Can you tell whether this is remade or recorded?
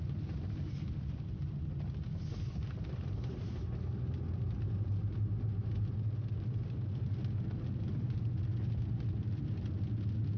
recorded